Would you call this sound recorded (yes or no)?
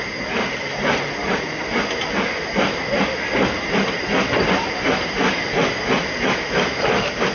yes